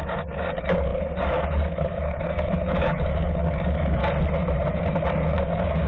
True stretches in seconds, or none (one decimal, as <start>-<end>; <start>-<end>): 4.0-4.7